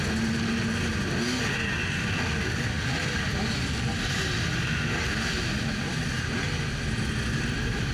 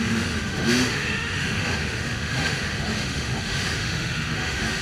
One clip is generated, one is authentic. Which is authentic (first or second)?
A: first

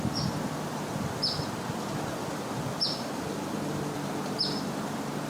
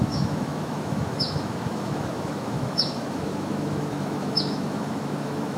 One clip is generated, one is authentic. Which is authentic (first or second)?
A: first